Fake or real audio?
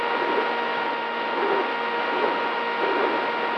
real